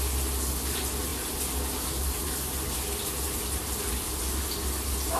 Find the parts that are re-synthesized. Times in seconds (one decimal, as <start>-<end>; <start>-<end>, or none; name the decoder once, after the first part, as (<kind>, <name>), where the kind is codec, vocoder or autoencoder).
none